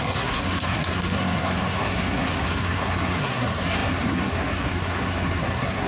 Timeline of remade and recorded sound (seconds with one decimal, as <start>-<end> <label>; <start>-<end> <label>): 0.0-5.9 remade